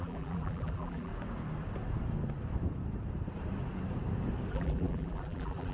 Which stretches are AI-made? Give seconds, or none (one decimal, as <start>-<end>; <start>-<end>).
0.0-1.1; 4.5-5.7